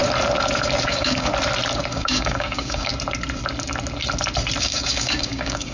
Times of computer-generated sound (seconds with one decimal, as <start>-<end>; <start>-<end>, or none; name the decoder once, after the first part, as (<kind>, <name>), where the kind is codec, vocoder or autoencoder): 0.9-1.3 (codec, DAC); 1.9-2.9; 4.6-5.7